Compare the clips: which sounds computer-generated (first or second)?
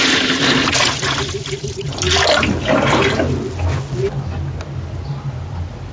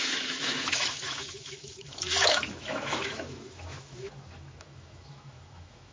second